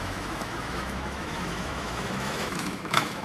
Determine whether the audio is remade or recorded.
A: remade